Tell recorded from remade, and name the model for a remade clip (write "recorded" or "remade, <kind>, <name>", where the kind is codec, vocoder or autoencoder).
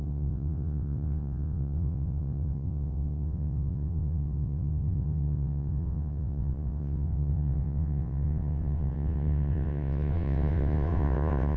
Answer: remade, vocoder, WaveNeXt